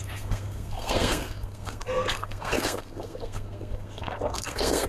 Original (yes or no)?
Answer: no